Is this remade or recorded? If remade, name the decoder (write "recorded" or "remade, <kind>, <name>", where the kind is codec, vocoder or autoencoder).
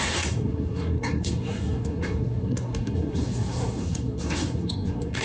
remade, codec, SNAC